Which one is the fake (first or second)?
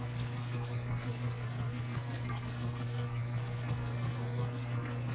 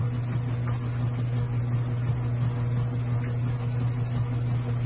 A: first